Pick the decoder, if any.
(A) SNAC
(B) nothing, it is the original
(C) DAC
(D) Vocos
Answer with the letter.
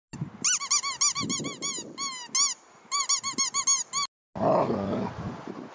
B